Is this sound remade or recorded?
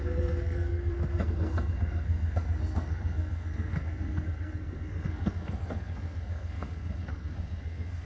remade